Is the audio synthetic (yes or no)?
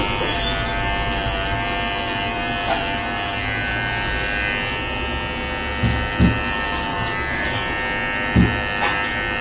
no